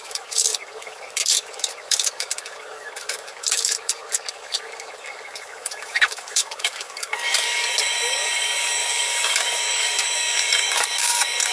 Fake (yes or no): yes